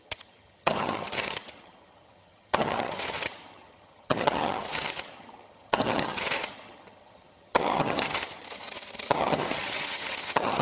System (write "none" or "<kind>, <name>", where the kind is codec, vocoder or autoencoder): vocoder, HiFi-GAN